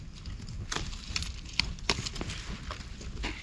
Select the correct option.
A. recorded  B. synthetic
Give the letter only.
A